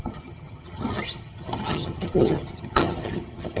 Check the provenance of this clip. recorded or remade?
remade